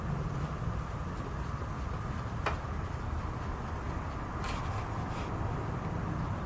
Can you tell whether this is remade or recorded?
recorded